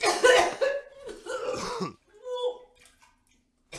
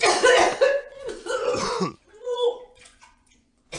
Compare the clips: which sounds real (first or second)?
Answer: first